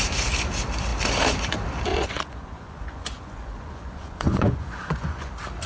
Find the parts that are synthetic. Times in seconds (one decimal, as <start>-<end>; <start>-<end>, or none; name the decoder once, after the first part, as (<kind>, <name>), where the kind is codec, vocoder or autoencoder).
1.9-5.3 (vocoder, Vocos)